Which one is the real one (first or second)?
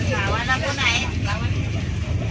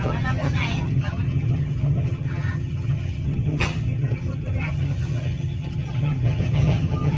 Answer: first